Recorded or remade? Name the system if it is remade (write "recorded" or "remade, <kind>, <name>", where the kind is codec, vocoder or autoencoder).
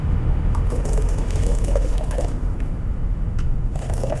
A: remade, autoencoder, DAC-VAE